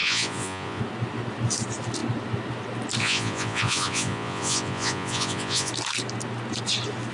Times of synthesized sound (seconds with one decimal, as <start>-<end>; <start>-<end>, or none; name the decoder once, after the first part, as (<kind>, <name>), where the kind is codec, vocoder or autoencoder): 0.0-0.8 (vocoder, Vocos); 3.0-5.7